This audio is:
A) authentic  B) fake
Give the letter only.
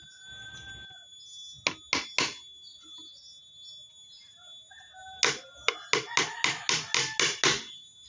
A